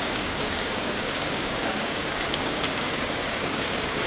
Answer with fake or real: fake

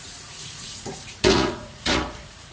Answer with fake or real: fake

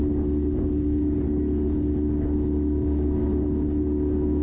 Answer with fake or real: real